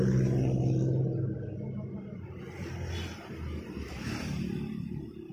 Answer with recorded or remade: recorded